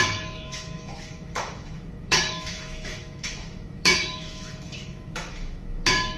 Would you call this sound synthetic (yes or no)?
yes